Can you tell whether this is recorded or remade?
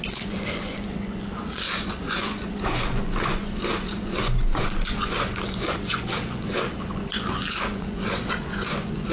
remade